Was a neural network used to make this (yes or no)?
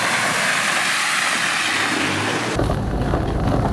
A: no